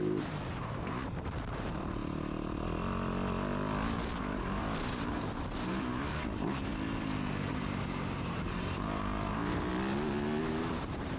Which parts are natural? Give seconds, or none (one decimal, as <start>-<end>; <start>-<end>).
2.0-4.2; 6.7-7.5; 9.7-10.4